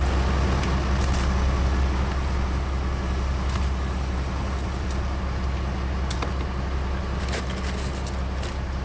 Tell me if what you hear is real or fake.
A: real